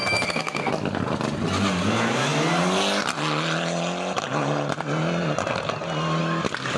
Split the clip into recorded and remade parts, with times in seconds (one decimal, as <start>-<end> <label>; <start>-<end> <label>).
0.0-0.7 remade; 0.7-6.8 recorded